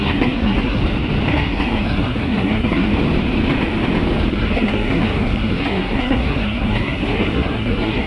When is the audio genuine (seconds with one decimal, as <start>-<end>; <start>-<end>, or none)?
0.8-1.3; 2.9-4.3

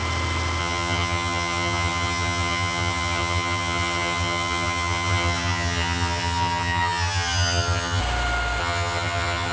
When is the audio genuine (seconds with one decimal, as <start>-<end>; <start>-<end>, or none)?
0.0-0.6; 8.0-8.6